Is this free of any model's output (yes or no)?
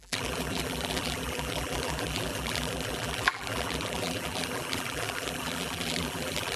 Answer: no